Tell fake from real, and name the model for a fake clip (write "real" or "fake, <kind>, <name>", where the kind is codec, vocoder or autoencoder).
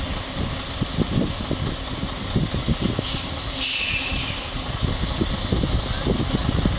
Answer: real